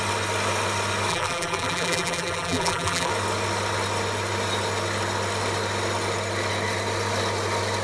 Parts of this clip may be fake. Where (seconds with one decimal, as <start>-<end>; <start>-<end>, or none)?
1.1-3.1